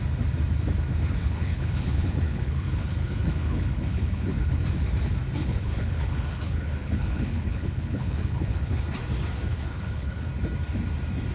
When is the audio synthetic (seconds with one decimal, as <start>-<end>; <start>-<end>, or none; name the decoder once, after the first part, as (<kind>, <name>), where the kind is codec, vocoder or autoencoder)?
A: 1.2-4.6 (codec, HILCodec); 5.4-8.8; 9.5-10.3